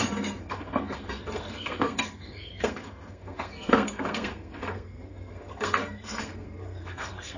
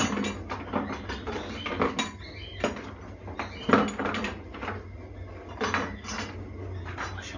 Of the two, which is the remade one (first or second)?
first